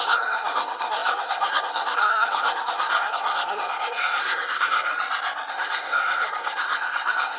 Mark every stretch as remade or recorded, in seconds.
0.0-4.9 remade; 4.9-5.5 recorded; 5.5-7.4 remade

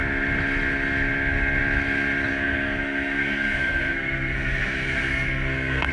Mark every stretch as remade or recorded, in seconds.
0.0-2.3 recorded; 2.3-5.9 remade

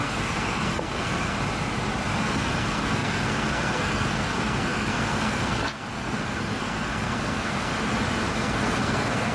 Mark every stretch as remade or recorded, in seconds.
0.0-1.4 remade; 1.4-2.2 recorded; 2.2-7.7 remade; 7.7-8.3 recorded; 8.3-9.3 remade

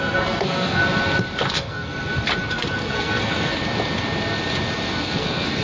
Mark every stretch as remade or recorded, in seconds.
0.0-0.8 remade; 0.8-1.5 recorded; 1.5-1.9 remade; 1.9-2.5 recorded; 2.5-3.6 remade; 3.6-5.0 recorded; 5.0-5.6 remade

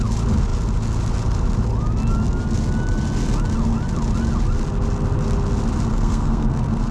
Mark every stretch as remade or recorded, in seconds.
0.0-5.9 recorded; 5.9-6.9 remade

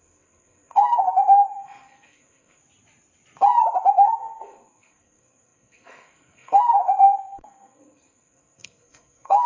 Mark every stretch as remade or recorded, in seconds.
0.0-2.6 remade; 2.6-3.9 recorded; 3.9-9.5 remade